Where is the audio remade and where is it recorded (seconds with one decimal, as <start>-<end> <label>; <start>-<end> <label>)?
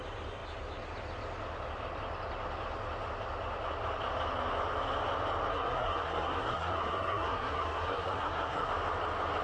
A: 0.0-5.5 recorded; 5.5-8.7 remade; 8.7-9.4 recorded